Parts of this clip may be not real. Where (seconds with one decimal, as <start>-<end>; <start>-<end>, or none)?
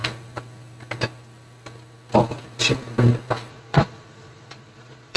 3.5-5.2